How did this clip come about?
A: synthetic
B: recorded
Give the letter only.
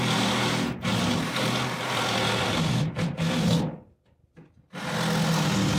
B